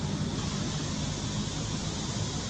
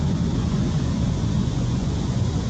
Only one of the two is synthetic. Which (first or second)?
second